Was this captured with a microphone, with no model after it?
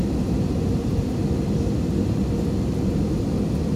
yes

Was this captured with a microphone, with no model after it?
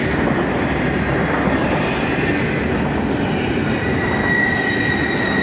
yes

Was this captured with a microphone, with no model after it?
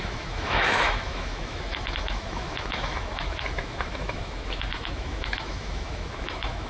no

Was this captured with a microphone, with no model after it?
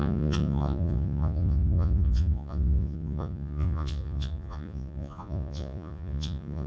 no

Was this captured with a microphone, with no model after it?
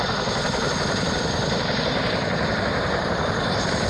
no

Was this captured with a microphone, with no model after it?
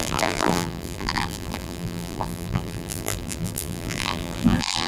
no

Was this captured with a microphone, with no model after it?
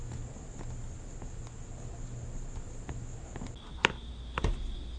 yes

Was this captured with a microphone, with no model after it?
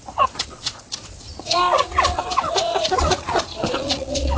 no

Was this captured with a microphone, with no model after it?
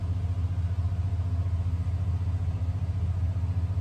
yes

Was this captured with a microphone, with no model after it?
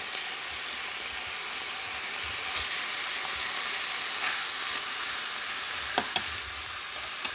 yes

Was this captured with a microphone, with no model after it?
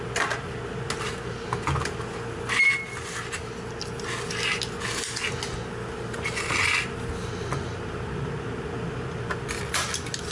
yes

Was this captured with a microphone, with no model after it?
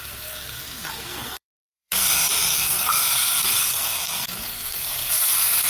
no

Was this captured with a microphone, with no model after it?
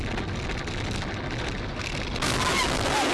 yes